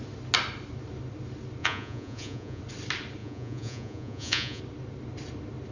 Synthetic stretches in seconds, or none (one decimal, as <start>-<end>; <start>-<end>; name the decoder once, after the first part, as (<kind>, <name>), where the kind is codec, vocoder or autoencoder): 1.6-2.6 (vocoder, Vocos); 3.2-4.6